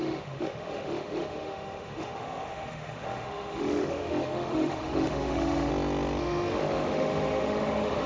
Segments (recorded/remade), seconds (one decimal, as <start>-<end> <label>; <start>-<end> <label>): 0.0-5.7 remade; 5.7-6.2 recorded; 6.2-8.1 remade

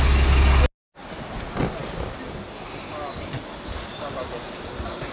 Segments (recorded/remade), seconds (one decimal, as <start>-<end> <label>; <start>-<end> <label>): 0.0-5.1 recorded

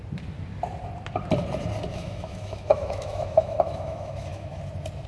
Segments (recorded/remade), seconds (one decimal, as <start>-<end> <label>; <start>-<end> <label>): 0.0-1.9 recorded; 1.9-4.6 remade; 4.6-5.1 recorded